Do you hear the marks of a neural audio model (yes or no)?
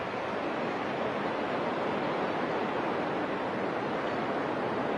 no